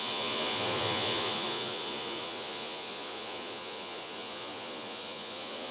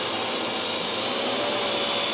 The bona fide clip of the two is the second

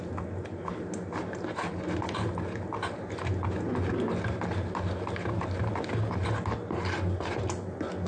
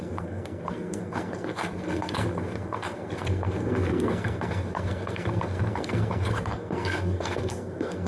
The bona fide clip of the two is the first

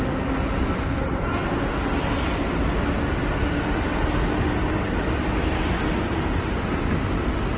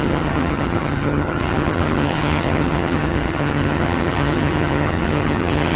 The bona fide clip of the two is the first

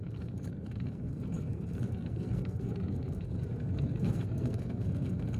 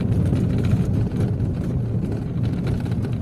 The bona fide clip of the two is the second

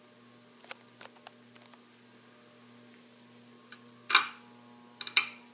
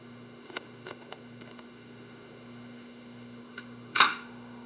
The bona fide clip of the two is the first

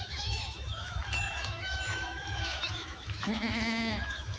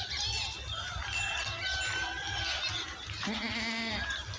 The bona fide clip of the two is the second